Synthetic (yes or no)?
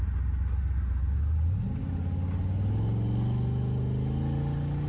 no